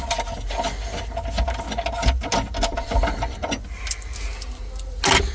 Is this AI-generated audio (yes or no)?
no